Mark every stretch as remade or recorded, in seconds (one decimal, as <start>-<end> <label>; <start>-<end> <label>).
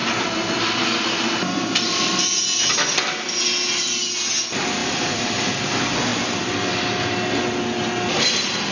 0.0-3.4 remade; 3.4-4.8 recorded; 4.8-5.6 remade; 5.6-6.1 recorded; 6.1-6.7 remade; 6.7-8.7 recorded